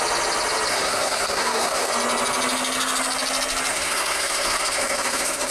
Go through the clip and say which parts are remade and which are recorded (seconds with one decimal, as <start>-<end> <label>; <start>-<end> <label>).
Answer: 0.0-0.7 recorded; 0.7-1.9 remade; 1.9-3.7 recorded; 3.7-5.5 remade